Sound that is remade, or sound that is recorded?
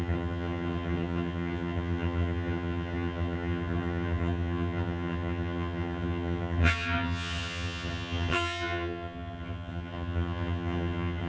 remade